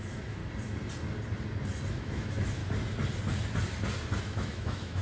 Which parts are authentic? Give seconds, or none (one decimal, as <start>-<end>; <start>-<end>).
0.4-1.9; 2.6-4.2